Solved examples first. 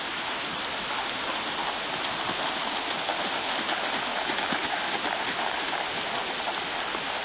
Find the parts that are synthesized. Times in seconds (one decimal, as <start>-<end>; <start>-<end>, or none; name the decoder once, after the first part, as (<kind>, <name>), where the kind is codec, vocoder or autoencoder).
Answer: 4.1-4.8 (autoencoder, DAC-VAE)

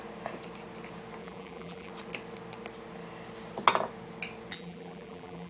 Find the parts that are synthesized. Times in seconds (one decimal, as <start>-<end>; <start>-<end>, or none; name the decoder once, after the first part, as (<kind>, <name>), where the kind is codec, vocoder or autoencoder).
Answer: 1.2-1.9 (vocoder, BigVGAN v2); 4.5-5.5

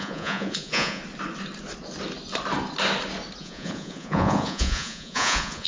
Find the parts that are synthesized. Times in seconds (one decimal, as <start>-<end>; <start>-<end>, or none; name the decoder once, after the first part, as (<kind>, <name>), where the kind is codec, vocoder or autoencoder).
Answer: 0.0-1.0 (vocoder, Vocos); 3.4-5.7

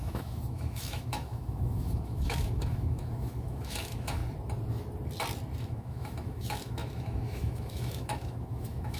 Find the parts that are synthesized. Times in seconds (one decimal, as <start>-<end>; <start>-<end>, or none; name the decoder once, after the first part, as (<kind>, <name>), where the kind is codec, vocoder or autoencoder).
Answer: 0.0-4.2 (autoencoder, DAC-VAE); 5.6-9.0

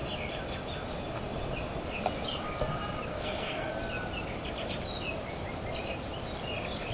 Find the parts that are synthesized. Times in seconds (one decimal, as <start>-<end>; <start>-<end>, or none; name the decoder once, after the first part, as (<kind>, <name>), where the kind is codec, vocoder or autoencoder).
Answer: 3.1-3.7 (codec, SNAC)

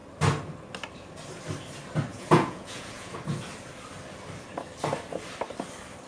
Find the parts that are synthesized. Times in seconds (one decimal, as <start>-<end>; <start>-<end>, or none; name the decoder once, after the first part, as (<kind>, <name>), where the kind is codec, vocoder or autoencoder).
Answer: 2.1-3.1 (vocoder, Vocos)

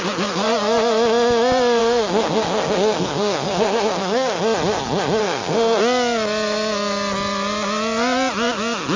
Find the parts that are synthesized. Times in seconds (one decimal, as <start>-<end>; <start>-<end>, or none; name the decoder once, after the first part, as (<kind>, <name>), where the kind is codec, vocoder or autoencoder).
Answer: 1.8-4.4 (codec, SNAC); 5.2-5.8